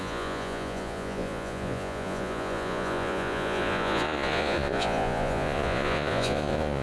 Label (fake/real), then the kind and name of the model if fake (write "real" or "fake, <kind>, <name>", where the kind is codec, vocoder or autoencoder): fake, vocoder, Vocos